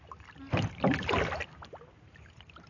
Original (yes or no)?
yes